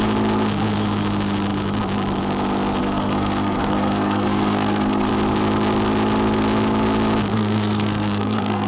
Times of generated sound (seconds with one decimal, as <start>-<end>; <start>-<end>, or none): 2.8-5.1; 7.3-8.7